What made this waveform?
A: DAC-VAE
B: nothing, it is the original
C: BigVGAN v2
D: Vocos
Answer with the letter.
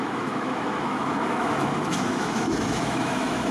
A